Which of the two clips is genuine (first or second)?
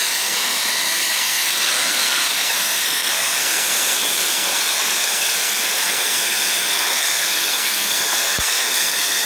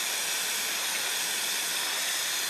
second